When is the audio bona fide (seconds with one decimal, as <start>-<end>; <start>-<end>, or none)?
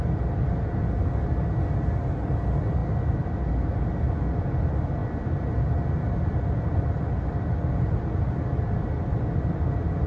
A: 0.0-10.1